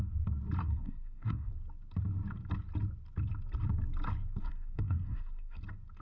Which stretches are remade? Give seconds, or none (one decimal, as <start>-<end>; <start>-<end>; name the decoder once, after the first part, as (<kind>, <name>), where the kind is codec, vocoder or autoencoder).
0.6-1.5 (codec, SNAC); 4.4-5.6